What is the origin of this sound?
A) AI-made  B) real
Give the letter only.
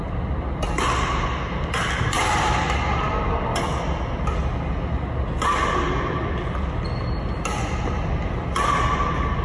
B